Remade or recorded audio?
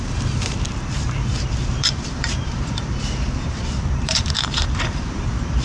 remade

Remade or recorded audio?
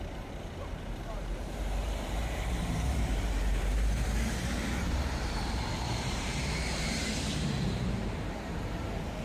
remade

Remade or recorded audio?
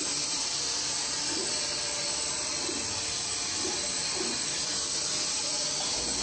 remade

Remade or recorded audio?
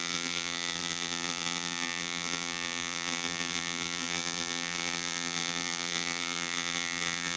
remade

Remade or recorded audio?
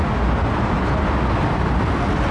recorded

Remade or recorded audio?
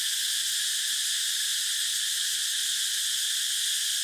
recorded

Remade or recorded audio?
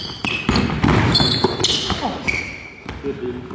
recorded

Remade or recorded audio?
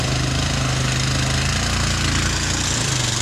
recorded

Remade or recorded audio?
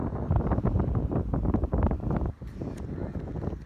recorded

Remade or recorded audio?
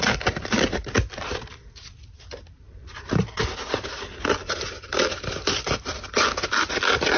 remade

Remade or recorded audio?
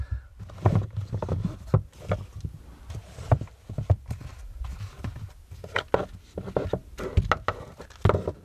recorded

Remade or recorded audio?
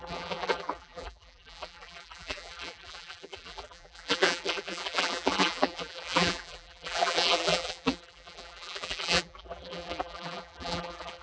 remade